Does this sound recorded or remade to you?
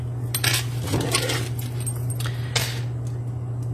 recorded